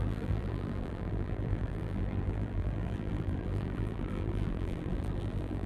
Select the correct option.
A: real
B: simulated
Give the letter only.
B